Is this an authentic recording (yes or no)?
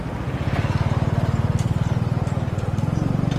yes